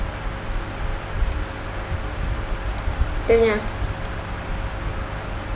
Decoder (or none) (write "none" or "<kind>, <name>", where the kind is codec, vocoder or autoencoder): none